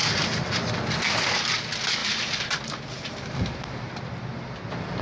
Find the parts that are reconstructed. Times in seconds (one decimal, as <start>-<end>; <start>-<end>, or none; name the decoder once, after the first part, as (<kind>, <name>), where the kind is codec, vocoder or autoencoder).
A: 2.0-4.0 (vocoder, BigVGAN v2)